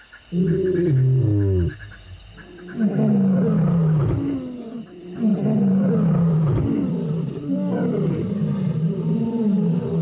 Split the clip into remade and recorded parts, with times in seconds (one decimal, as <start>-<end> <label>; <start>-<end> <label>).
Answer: 0.0-5.3 recorded; 5.3-7.5 remade; 7.5-10.0 recorded